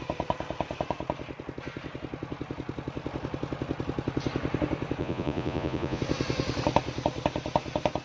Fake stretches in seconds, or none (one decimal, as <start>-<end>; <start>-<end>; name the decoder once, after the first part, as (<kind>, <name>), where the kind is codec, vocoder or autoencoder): 5.0-6.0 (vocoder, Vocos)